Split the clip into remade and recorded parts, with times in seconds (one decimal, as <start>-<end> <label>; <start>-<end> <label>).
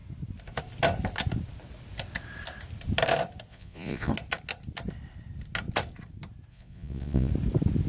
0.0-3.5 recorded; 3.5-4.1 remade; 4.1-6.5 recorded; 6.5-7.3 remade; 7.3-7.9 recorded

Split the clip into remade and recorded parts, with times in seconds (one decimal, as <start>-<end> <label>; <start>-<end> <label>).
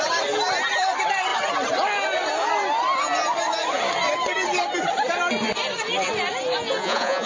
0.0-6.8 recorded; 6.8-7.3 remade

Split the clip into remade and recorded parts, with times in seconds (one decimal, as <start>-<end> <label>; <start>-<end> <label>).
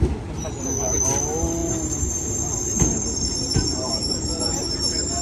0.0-1.6 recorded; 1.6-4.7 remade; 4.7-5.2 recorded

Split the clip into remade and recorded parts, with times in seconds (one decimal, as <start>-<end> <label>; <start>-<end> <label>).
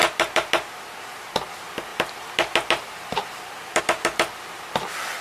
0.0-5.2 recorded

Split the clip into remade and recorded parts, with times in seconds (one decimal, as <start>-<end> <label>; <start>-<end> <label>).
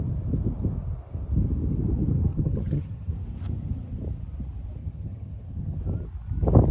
0.0-2.3 recorded; 2.3-3.1 remade; 3.1-4.8 recorded; 4.8-5.8 remade; 5.8-6.7 recorded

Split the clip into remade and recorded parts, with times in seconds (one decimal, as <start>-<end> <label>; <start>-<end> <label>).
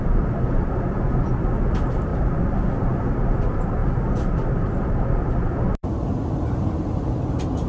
0.0-7.7 recorded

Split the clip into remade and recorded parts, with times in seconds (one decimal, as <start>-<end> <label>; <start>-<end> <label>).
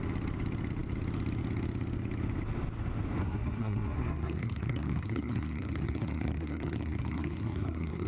0.0-3.2 recorded; 3.2-8.1 remade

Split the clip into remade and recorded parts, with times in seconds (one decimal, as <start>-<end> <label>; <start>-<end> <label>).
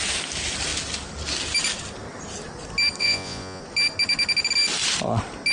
0.0-3.0 recorded; 3.0-3.6 remade; 3.6-5.5 recorded